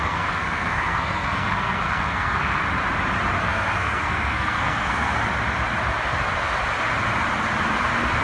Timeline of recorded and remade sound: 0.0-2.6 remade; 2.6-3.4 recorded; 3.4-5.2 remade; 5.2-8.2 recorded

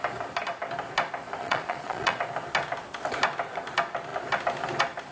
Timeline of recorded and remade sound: 0.0-1.4 recorded; 1.4-2.2 remade; 2.2-5.1 recorded

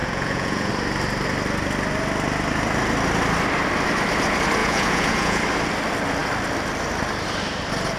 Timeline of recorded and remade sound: 0.0-0.7 remade; 0.7-4.6 recorded; 4.6-5.4 remade; 5.4-8.0 recorded